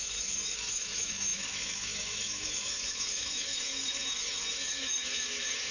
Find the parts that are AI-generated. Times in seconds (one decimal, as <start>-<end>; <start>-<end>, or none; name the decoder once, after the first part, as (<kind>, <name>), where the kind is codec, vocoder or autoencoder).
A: 0.0-5.7 (autoencoder, DAC-VAE)